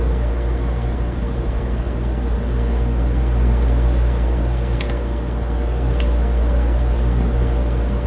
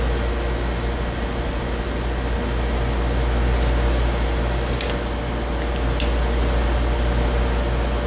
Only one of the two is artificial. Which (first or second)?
first